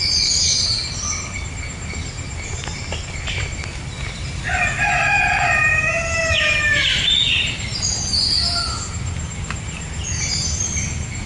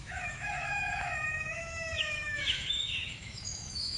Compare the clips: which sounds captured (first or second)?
first